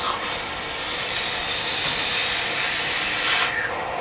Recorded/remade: recorded